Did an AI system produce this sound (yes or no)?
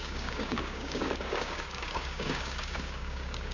yes